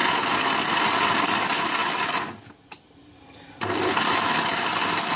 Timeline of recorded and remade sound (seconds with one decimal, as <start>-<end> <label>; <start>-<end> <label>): 0.0-5.2 recorded